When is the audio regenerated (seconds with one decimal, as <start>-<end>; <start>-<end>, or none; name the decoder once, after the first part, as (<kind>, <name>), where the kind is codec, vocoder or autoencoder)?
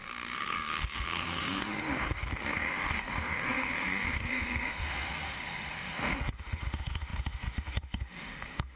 0.0-8.8 (autoencoder, DAC-VAE)